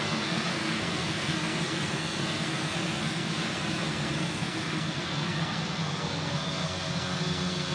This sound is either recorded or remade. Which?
remade